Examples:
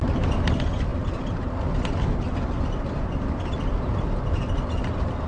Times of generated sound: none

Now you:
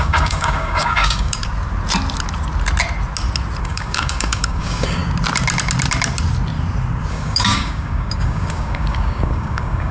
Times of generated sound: 0.0-1.4 (codec, DAC); 3.6-5.0; 7.1-9.9

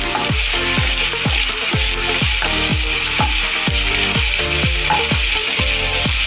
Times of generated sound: none

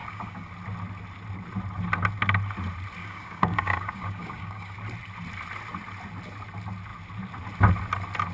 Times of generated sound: 0.0-0.5 (codec, DAC); 3.0-4.8

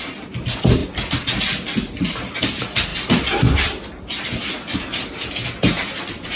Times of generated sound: none